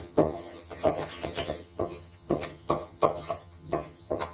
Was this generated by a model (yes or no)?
yes